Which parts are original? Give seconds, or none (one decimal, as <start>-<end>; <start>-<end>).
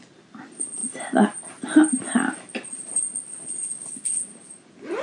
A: 0.0-5.0